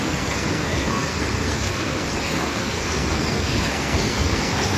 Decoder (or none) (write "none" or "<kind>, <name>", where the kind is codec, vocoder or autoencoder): codec, SNAC